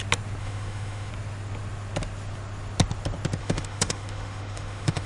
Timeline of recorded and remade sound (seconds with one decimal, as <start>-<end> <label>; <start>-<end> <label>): 0.0-0.4 recorded; 0.4-1.1 remade; 1.1-3.4 recorded; 3.4-5.1 remade